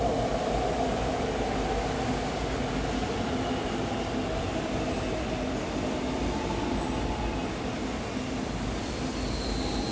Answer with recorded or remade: recorded